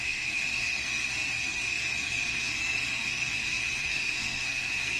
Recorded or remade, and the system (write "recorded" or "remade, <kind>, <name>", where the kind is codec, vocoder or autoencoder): remade, codec, SNAC